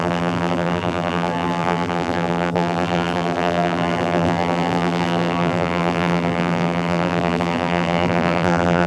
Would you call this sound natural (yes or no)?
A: no